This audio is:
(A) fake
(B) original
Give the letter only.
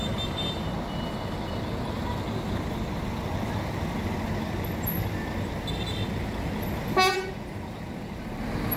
B